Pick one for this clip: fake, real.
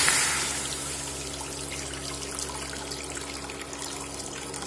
real